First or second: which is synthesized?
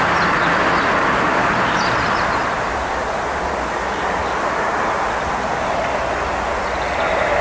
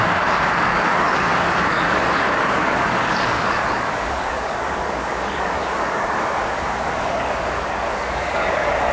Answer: second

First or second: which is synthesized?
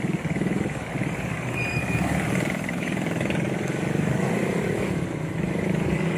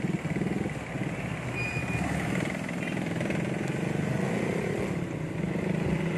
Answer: first